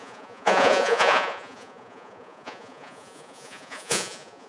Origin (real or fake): fake